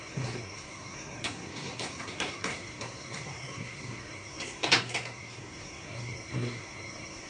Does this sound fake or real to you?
fake